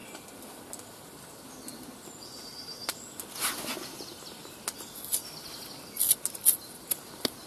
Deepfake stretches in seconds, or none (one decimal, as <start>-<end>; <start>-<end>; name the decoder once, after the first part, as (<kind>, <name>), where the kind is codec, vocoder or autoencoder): none